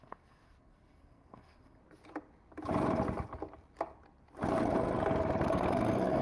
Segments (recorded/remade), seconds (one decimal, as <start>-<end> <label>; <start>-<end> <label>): 0.0-1.8 remade; 1.8-5.5 recorded; 5.5-6.2 remade